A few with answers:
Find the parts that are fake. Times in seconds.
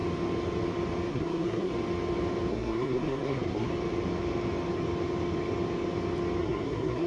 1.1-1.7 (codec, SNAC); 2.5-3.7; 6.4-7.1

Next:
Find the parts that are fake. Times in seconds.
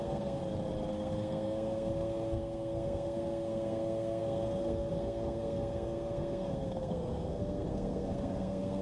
0.0-0.4 (codec, SNAC); 0.9-8.8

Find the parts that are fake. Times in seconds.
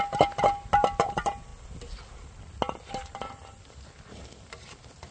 none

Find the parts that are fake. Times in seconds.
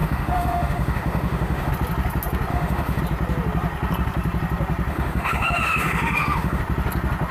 0.0-1.7 (autoencoder, DAC-VAE); 2.5-3.0; 4.9-6.6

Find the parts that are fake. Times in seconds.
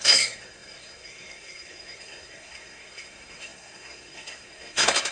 0.0-5.1 (codec, SNAC)